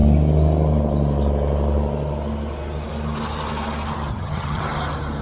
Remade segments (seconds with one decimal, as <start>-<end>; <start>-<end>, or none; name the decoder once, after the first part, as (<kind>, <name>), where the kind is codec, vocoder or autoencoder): 4.1-4.6 (vocoder, HiFi-GAN)